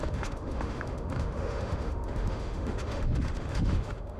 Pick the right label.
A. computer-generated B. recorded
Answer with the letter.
A